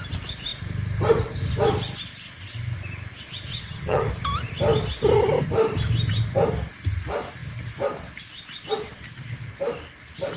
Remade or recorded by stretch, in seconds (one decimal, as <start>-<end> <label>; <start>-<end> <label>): 0.0-3.5 recorded; 3.5-4.1 remade; 4.1-10.4 recorded